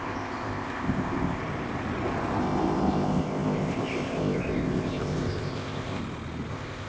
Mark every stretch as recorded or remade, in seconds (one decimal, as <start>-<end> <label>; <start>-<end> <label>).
0.0-1.4 remade; 1.4-2.4 recorded; 2.4-6.0 remade; 6.0-6.5 recorded; 6.5-6.9 remade